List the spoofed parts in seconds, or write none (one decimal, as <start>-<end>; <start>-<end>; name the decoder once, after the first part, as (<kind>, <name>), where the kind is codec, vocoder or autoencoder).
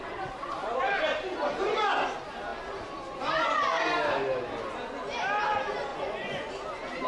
5.9-6.5 (vocoder, Vocos)